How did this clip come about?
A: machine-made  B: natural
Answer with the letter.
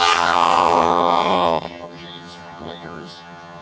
A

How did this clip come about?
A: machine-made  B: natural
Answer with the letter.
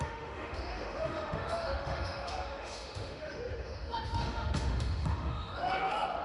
A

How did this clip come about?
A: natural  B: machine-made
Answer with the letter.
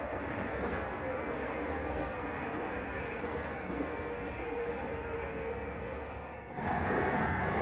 B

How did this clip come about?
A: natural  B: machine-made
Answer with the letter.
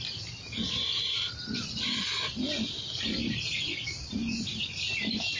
A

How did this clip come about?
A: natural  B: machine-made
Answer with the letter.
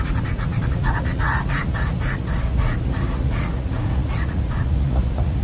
B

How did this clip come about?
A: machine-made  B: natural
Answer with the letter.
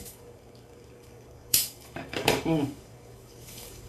A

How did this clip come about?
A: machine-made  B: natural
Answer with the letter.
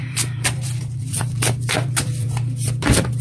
A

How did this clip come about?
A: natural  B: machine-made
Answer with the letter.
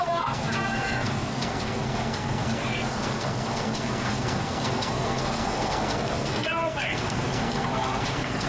B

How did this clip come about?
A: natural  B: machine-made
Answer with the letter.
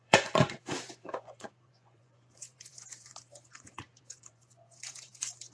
B